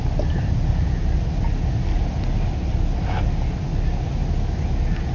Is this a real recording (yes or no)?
yes